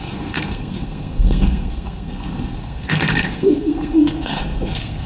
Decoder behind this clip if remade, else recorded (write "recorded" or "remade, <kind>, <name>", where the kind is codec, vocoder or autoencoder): remade, codec, SNAC